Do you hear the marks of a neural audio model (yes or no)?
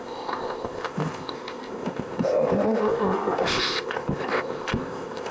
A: yes